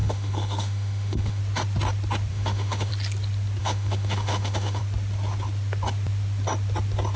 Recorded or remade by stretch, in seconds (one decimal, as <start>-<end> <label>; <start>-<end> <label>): 0.0-1.4 remade; 1.4-2.3 recorded; 2.3-2.9 remade; 2.9-3.6 recorded; 3.6-4.8 remade; 4.8-7.2 recorded

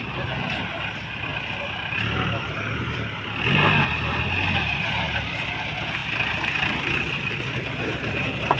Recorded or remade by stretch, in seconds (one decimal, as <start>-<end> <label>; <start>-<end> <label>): 0.0-6.0 recorded; 6.0-6.7 remade; 6.7-8.6 recorded